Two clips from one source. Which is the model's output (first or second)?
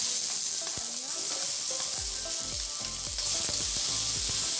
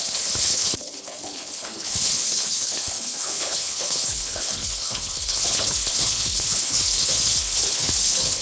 second